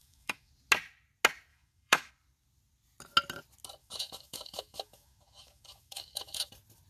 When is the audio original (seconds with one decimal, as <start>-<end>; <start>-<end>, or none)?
0.5-1.5; 2.1-3.8; 6.5-6.9